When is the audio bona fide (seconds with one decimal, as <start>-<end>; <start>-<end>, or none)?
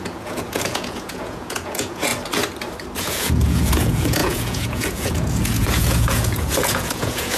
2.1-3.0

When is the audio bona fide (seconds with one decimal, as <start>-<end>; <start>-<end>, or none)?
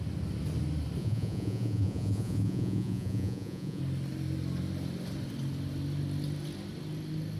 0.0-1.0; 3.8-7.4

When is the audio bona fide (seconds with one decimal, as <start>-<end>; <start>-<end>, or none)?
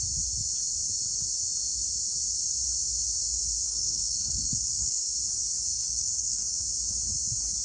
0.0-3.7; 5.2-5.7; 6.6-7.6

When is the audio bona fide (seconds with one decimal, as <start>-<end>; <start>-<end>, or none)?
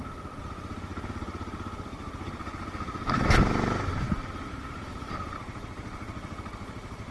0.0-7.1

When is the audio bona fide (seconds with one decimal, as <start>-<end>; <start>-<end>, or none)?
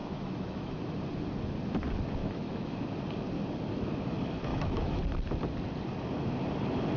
0.9-2.2; 2.7-4.5; 5.0-7.0